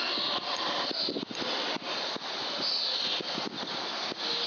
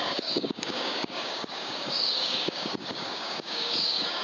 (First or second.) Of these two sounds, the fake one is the second